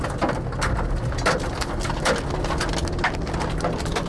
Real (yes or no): yes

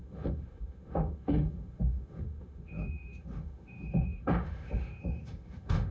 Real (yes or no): no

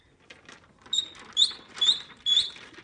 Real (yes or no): yes